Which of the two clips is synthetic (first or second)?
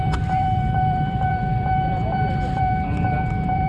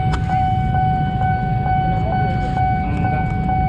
first